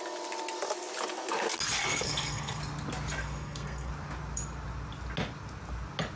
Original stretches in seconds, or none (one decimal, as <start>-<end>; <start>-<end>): 0.0-1.8; 2.6-3.2; 3.9-6.2